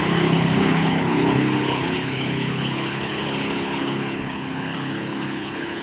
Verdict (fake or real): fake